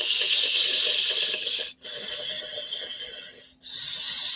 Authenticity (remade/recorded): recorded